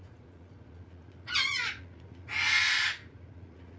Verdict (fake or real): fake